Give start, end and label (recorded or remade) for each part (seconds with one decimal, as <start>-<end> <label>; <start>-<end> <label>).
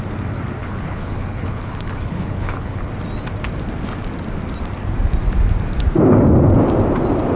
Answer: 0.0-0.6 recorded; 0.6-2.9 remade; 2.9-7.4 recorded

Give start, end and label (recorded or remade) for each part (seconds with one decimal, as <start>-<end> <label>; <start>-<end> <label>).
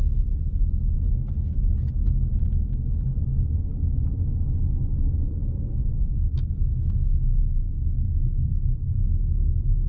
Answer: 0.0-9.9 recorded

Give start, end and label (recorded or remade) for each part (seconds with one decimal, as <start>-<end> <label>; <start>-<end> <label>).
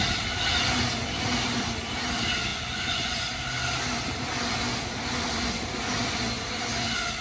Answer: 0.0-2.5 recorded; 2.5-3.3 remade; 3.3-7.2 recorded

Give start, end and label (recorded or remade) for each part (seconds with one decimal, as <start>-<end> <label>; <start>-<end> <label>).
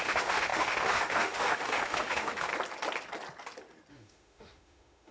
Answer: 0.0-2.5 remade; 2.5-3.9 recorded; 3.9-5.1 remade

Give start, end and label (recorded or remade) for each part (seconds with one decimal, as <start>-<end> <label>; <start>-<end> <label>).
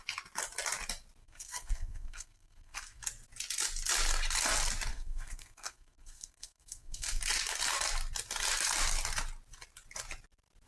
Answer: 0.0-1.2 recorded; 1.2-3.0 remade; 3.0-4.9 recorded; 4.9-7.2 remade; 7.2-10.7 recorded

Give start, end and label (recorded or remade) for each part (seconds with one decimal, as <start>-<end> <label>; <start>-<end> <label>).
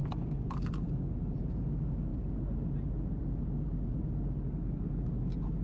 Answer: 0.0-5.6 recorded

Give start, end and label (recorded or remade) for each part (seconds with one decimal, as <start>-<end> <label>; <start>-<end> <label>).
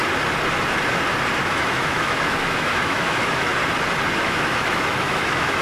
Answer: 0.0-1.4 recorded; 1.4-3.5 remade; 3.5-4.2 recorded; 4.2-5.6 remade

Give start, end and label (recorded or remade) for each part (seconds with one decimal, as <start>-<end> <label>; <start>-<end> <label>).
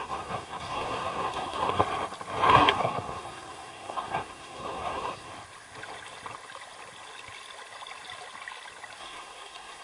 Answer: 0.0-1.8 remade; 1.8-2.5 recorded; 2.5-5.3 remade; 5.3-9.0 recorded; 9.0-9.8 remade